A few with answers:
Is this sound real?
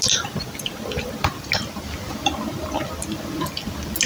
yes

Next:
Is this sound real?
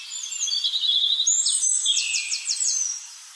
yes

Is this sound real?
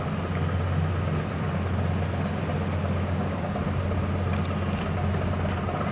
yes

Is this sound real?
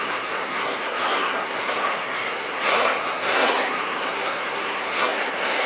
no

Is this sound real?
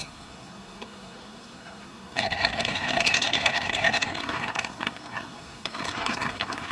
no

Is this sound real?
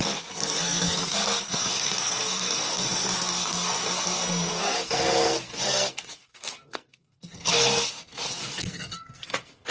no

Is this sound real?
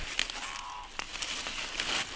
yes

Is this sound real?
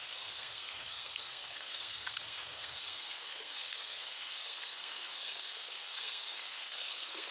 no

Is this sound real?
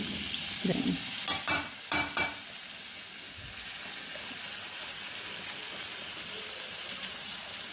yes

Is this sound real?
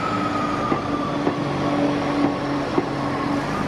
yes